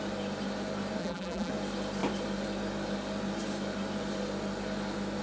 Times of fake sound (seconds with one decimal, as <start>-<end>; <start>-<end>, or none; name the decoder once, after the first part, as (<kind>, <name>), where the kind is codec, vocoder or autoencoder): 1.0-1.5 (vocoder, BigVGAN v2)